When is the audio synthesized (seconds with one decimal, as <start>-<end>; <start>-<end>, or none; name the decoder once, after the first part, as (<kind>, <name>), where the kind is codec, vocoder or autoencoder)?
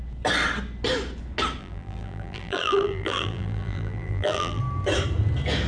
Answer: 1.6-4.6 (vocoder, BigVGAN v2)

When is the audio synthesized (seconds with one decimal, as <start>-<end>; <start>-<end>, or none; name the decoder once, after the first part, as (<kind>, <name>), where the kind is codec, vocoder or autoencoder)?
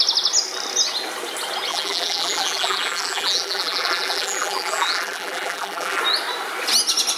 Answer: 1.7-6.0 (vocoder, BigVGAN v2)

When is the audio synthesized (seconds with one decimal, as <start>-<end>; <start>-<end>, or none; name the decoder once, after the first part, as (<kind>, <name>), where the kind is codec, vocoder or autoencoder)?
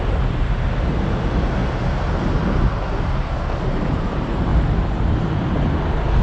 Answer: 0.0-1.6 (vocoder, BigVGAN v2); 3.9-4.5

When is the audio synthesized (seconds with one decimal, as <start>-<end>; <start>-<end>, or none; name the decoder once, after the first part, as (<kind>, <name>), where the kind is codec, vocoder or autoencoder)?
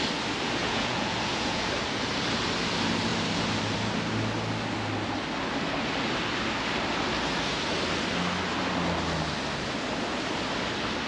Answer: 0.6-1.6 (vocoder, Vocos)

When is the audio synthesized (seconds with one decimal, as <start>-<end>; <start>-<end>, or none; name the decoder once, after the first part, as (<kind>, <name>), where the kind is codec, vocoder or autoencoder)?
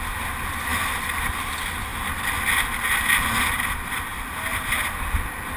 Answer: none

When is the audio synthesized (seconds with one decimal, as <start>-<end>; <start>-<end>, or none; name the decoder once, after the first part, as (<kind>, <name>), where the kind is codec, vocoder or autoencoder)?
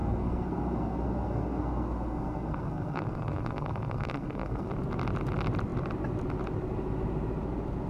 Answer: 0.0-4.7 (codec, SNAC)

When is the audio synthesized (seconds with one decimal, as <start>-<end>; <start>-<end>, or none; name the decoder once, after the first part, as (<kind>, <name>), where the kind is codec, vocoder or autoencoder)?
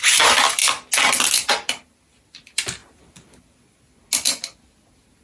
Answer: none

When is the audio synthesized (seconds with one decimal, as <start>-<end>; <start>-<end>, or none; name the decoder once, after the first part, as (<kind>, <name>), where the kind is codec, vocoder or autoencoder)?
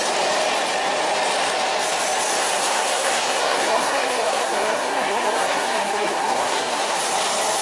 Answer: 2.4-7.0 (codec, SNAC)